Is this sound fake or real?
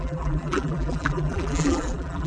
fake